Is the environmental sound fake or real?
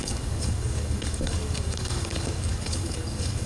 fake